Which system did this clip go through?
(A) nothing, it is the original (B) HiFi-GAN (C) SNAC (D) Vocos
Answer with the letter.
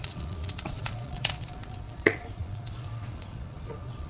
D